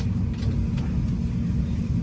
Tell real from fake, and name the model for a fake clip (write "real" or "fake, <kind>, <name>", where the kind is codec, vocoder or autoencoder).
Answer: real